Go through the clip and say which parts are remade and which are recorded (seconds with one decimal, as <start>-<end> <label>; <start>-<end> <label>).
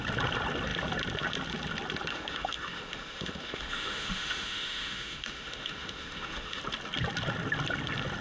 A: 0.0-2.1 recorded; 2.1-6.6 remade; 6.6-8.2 recorded